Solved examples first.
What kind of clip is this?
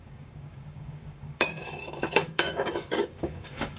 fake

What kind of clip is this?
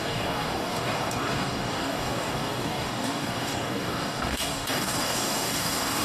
fake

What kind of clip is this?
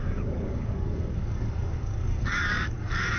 fake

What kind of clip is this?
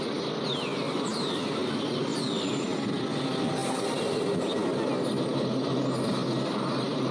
real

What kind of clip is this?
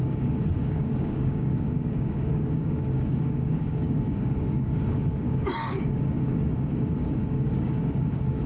fake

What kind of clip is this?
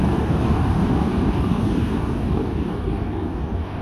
fake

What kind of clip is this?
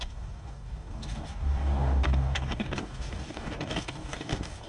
fake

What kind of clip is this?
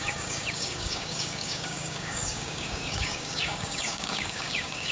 fake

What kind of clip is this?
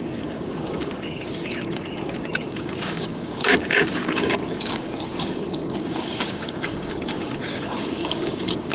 fake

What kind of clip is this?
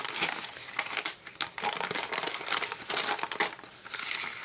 real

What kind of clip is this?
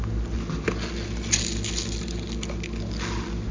real